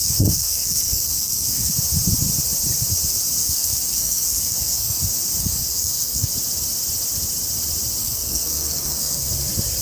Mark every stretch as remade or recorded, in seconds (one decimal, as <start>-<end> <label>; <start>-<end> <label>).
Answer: 0.0-1.7 remade; 1.7-3.4 recorded; 3.4-5.0 remade; 5.0-5.4 recorded; 5.4-6.3 remade; 6.3-8.0 recorded; 8.0-9.3 remade; 9.3-9.8 recorded